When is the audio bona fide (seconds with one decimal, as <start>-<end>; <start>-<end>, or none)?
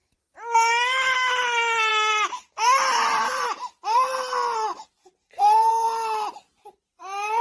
0.0-1.9; 4.1-4.7; 5.7-7.4